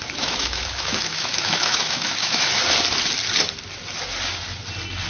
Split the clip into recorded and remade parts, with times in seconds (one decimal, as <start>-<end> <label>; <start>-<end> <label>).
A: 0.0-2.6 remade; 2.6-5.1 recorded